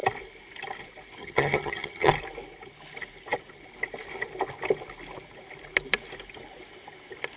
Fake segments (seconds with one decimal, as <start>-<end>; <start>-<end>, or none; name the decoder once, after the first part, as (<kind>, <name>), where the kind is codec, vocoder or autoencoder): 1.2-2.1 (vocoder, HiFi-GAN)